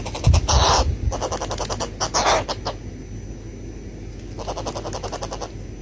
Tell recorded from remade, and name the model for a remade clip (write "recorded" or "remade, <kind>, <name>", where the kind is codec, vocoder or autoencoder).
recorded